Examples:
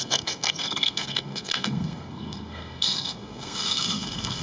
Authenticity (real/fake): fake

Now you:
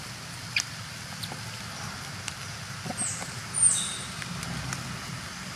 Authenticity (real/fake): real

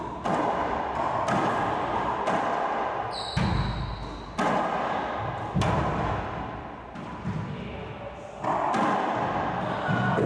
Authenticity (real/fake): real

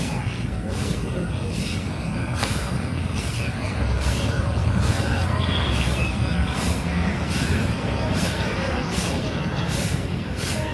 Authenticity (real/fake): fake